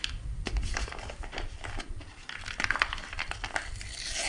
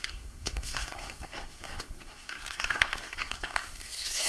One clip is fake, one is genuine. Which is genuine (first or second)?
first